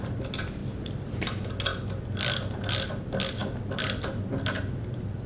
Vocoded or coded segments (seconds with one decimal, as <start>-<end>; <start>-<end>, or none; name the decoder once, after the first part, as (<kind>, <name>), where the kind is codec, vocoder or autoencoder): none